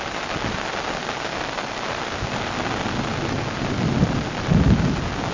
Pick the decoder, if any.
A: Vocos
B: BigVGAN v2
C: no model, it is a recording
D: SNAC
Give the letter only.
C